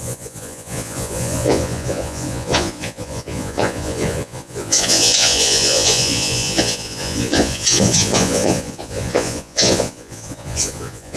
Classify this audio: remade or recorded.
remade